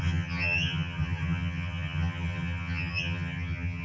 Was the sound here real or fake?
fake